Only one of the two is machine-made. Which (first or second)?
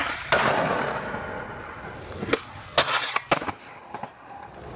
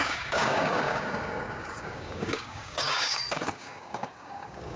second